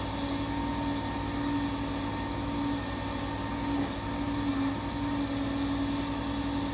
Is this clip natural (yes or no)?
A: yes